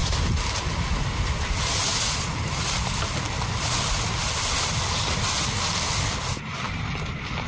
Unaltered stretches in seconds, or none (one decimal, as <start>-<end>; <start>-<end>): 0.0-7.5